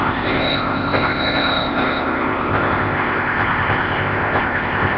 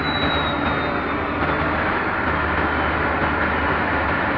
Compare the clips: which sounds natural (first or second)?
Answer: second